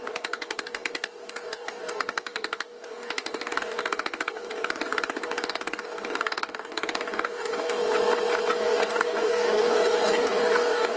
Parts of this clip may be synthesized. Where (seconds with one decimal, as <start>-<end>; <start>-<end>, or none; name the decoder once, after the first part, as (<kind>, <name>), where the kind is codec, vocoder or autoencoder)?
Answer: 0.0-7.8 (codec, DAC); 8.5-11.0

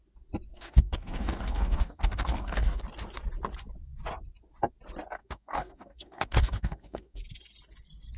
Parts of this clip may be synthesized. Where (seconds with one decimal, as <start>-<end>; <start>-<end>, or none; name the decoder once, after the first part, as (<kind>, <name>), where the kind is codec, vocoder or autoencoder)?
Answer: 0.5-2.8 (codec, DAC); 5.2-7.2